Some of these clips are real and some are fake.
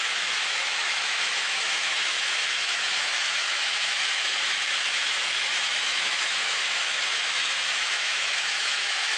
fake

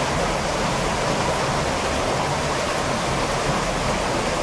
real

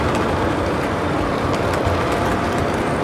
fake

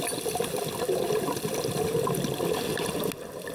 real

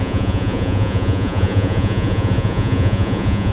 fake